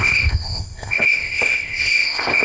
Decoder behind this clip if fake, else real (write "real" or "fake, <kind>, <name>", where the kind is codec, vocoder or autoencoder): fake, codec, ZipCodec